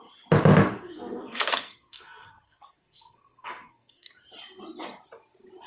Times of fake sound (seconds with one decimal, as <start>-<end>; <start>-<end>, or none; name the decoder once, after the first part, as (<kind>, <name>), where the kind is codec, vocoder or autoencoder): 0.7-4.1 (codec, SNAC)